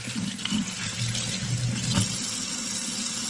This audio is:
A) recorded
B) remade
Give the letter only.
A